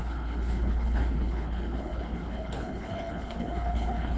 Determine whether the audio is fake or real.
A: fake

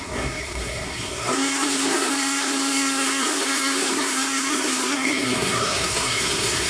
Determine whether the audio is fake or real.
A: fake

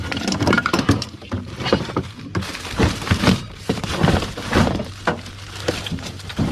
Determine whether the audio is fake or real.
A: fake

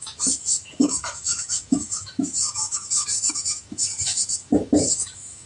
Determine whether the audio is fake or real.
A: fake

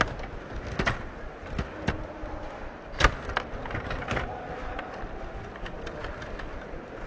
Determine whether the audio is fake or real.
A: real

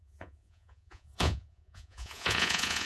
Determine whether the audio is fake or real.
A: fake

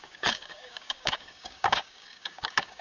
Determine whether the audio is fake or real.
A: fake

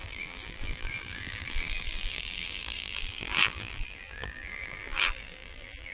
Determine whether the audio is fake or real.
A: fake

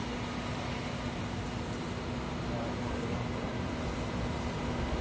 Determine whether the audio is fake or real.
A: real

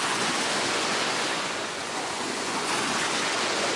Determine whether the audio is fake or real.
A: fake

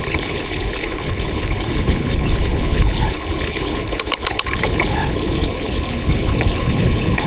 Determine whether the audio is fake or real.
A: fake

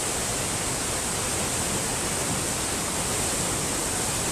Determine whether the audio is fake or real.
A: real